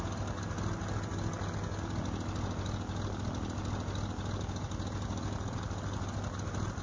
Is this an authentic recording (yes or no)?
yes